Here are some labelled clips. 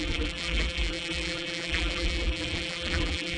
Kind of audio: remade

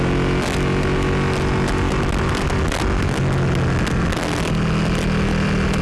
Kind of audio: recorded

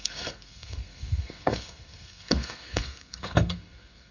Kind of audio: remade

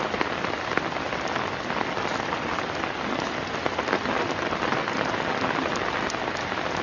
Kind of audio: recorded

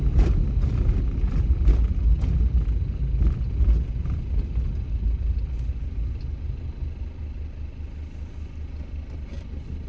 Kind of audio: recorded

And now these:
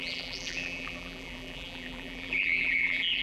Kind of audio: remade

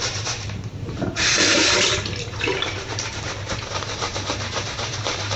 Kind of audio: remade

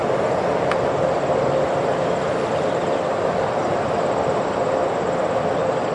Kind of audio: recorded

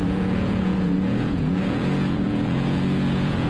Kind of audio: remade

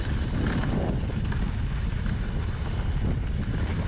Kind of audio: recorded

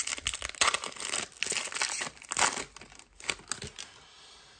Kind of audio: recorded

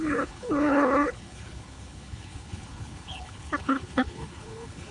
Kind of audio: remade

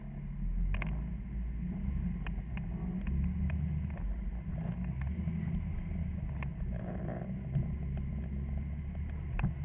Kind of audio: recorded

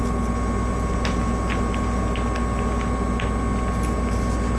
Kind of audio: recorded